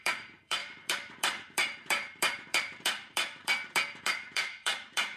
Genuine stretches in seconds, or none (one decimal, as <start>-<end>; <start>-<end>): none